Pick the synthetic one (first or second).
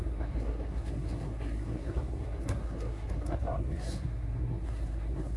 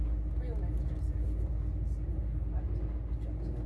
first